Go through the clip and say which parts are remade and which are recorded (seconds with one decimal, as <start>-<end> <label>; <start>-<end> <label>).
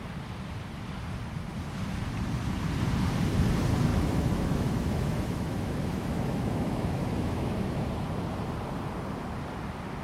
0.0-3.9 recorded; 3.9-7.9 remade; 7.9-10.0 recorded